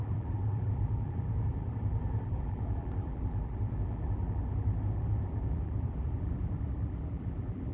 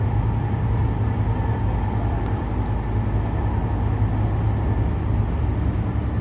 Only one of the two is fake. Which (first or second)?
first